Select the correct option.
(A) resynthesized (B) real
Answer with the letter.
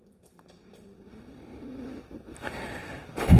B